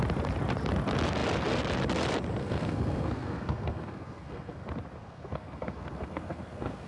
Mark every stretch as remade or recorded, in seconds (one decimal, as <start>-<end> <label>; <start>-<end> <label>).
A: 0.0-2.4 recorded; 2.4-4.6 remade; 4.6-5.0 recorded; 5.0-6.9 remade